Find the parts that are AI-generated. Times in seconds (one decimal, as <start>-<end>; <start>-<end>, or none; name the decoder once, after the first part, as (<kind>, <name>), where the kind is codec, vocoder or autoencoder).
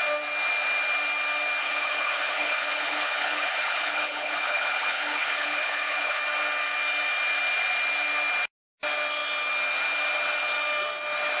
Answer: 1.6-6.2 (codec, HILCodec)